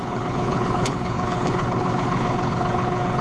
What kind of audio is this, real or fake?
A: fake